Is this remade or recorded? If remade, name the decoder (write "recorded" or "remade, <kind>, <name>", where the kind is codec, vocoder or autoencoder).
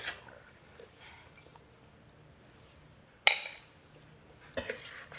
recorded